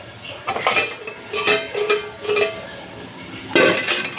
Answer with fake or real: real